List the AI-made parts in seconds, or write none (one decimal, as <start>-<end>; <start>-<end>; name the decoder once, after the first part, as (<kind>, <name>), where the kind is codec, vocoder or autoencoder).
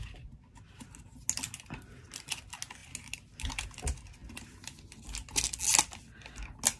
none